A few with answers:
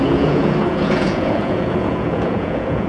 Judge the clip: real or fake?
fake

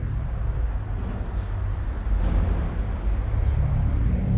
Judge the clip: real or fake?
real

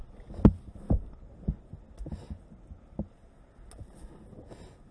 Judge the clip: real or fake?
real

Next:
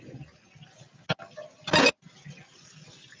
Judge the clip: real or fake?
real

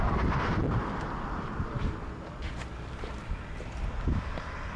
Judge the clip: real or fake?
fake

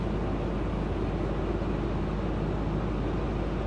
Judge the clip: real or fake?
real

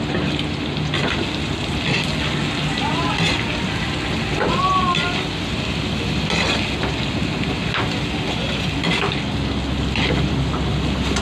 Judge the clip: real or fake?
real